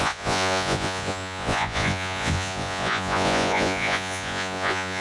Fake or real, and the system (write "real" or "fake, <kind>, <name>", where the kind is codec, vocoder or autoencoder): fake, vocoder, Vocos